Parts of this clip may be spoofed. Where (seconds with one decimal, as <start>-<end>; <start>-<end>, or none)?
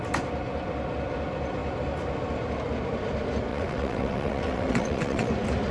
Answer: 3.5-5.3